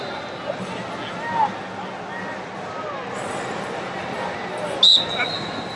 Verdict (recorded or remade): recorded